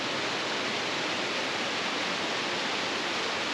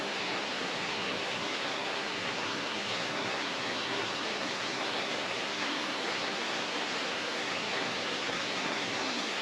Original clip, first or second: first